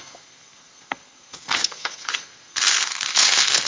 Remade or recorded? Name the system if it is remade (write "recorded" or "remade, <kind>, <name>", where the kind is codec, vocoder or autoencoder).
remade, codec, SNAC